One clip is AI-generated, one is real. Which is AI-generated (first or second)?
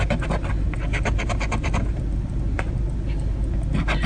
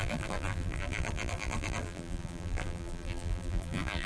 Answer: second